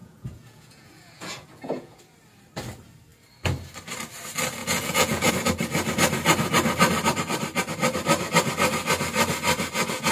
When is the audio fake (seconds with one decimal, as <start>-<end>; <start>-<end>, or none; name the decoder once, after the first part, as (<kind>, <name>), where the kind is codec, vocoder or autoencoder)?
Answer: 0.0-2.0 (vocoder, Vocos); 4.6-5.3